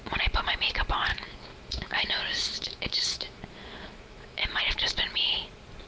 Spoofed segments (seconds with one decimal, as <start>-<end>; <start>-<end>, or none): 1.1-4.6

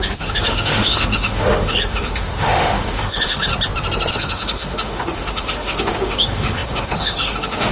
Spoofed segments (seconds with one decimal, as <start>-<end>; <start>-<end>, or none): 0.0-3.5; 4.1-7.7

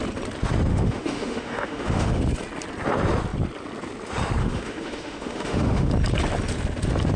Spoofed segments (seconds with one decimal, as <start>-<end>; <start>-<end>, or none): 0.7-2.2; 4.4-5.9

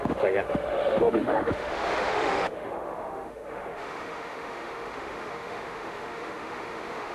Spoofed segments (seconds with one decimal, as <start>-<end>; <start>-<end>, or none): 0.0-7.1